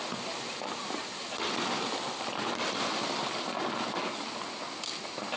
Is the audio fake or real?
real